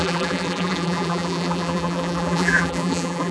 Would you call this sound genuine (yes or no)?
no